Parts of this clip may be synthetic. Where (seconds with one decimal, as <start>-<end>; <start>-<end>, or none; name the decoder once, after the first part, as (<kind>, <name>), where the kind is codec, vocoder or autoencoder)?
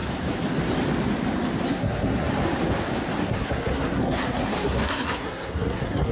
1.7-2.3 (codec, SNAC); 3.2-6.1